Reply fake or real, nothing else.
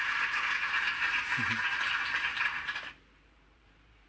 fake